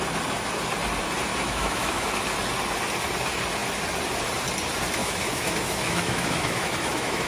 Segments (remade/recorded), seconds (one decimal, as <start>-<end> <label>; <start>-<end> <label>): 0.0-1.3 recorded; 1.3-2.2 remade; 2.2-5.0 recorded; 5.0-7.3 remade